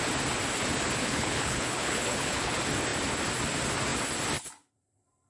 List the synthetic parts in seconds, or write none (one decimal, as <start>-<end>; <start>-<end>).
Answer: 1.0-2.5

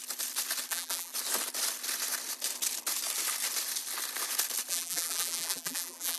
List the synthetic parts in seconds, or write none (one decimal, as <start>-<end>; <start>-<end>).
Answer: 0.7-1.1; 4.7-6.2

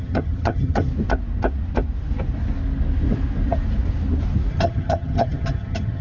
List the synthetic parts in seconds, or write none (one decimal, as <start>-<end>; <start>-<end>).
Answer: 0.0-0.9; 4.5-6.0

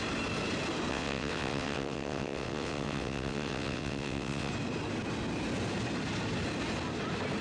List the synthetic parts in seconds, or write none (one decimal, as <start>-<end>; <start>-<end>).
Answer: 0.9-4.5

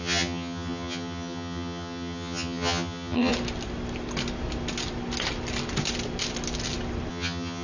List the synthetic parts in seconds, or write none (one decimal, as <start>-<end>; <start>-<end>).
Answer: 0.0-3.3; 7.1-7.6

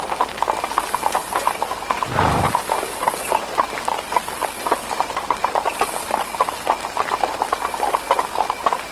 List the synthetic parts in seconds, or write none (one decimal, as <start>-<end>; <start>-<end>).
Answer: 0.0-1.2; 3.1-8.9